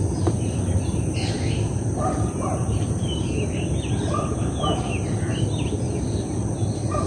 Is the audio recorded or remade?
remade